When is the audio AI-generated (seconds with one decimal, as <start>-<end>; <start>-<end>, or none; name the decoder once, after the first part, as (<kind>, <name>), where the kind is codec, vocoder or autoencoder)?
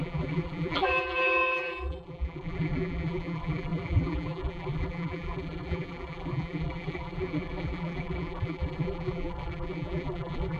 0.0-10.6 (vocoder, BigVGAN v2)